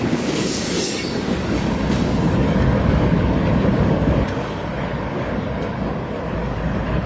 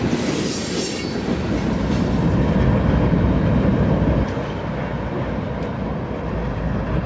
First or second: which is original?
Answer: second